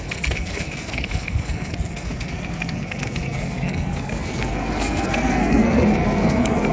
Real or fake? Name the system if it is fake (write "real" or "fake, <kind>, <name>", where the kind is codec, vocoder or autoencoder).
fake, codec, SNAC